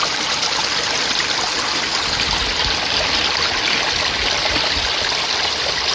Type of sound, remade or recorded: recorded